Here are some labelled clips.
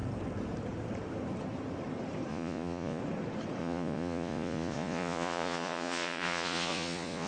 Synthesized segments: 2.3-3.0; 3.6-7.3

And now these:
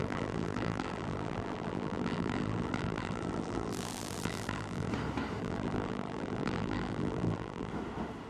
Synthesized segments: 0.0-4.9; 5.4-7.7

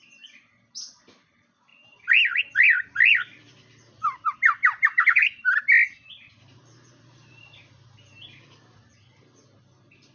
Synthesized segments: none